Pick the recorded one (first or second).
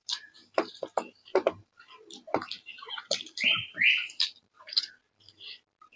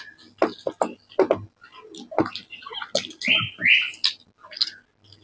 second